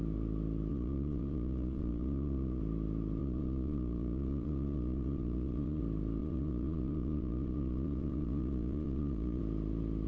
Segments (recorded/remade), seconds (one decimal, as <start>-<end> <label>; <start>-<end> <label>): 0.0-0.7 recorded; 0.7-2.6 remade; 2.6-3.2 recorded; 3.2-5.8 remade; 5.8-6.2 recorded; 6.2-9.4 remade; 9.4-10.1 recorded